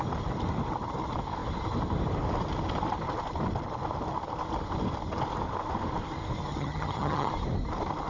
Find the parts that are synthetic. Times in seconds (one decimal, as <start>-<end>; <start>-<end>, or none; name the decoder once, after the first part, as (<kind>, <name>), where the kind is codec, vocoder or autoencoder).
6.5-7.3 (vocoder, HiFi-GAN)